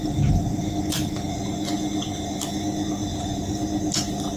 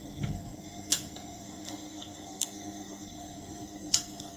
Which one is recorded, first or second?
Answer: first